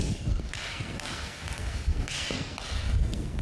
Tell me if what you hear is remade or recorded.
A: remade